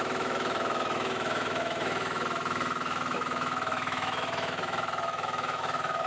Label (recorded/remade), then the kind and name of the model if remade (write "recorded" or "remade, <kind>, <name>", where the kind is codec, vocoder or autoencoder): remade, autoencoder, DAC-VAE